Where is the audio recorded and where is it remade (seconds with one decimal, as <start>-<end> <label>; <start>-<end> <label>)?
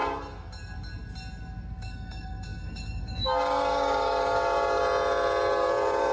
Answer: 0.0-1.7 recorded; 1.7-4.8 remade; 4.8-5.5 recorded; 5.5-6.1 remade